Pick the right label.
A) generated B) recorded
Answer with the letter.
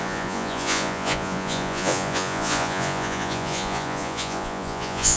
A